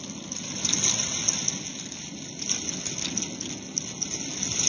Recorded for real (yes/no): yes